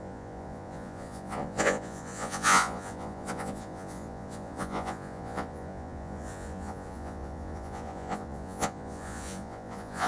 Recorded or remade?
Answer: remade